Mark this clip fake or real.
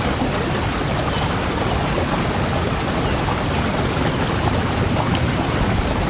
real